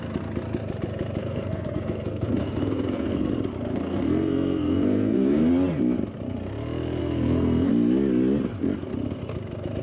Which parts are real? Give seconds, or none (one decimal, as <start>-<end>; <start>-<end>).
0.0-1.2; 3.3-3.7; 5.5-7.0; 7.7-9.8